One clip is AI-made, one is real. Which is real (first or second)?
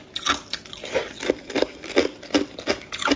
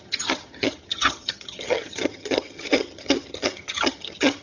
first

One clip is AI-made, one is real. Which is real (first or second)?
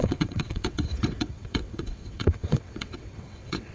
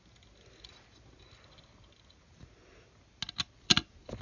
second